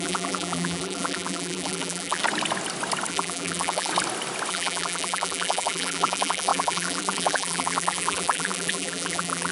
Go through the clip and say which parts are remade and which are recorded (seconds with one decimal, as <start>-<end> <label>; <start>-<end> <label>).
0.0-2.2 remade; 2.2-3.1 recorded; 3.1-3.9 remade; 3.9-4.5 recorded; 4.5-9.5 remade